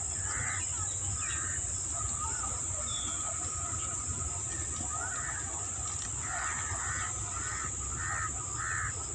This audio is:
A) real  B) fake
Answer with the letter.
A